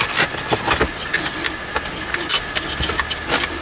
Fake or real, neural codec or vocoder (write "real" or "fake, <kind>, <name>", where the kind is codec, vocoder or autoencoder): real